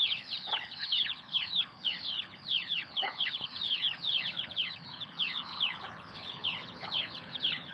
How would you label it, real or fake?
fake